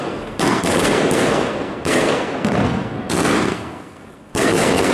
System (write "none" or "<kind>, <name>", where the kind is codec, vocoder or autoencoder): codec, SNAC